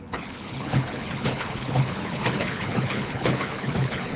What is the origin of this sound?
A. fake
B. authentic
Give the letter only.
A